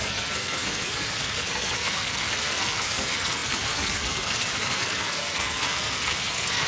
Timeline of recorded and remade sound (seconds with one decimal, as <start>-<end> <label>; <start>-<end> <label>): 0.0-6.7 remade